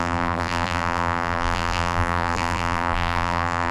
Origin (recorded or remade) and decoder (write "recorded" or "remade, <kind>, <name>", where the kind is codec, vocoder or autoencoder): remade, vocoder, BigVGAN v2